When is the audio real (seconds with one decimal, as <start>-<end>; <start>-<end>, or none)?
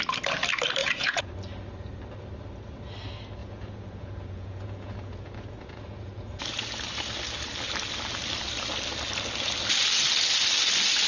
0.0-0.8; 1.3-3.4; 6.4-11.1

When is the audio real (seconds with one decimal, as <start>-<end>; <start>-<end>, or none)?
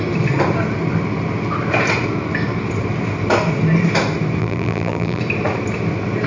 0.0-4.4; 5.2-6.3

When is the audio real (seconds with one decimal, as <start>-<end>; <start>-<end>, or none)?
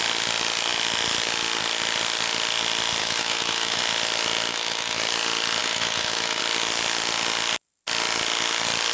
0.0-3.0; 3.8-4.5; 5.0-5.6; 6.4-8.9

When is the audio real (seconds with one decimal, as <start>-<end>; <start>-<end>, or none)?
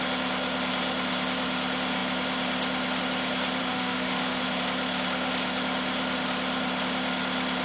0.0-3.6; 4.4-7.6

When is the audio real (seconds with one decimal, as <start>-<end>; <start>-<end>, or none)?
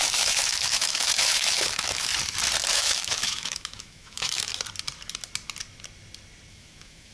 2.1-2.7; 4.5-6.5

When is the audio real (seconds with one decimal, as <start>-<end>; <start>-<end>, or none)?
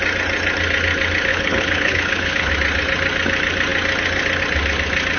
0.0-1.3; 2.5-5.2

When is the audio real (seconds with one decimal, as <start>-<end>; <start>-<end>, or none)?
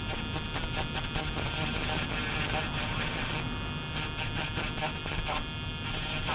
0.0-6.3